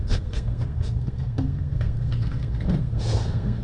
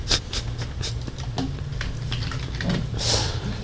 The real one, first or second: second